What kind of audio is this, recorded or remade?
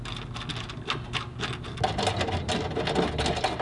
recorded